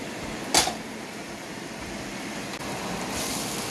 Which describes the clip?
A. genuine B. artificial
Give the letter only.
A